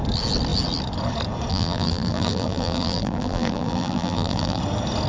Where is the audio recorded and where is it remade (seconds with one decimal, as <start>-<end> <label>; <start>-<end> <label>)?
0.0-1.5 recorded; 1.5-4.6 remade; 4.6-5.1 recorded

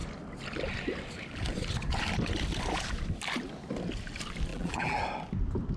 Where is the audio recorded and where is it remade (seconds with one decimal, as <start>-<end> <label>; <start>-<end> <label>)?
0.0-4.5 recorded; 4.5-5.0 remade; 5.0-5.8 recorded